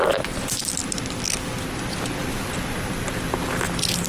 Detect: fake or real real